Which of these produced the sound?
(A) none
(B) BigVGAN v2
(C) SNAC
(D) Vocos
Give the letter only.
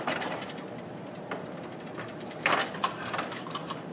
B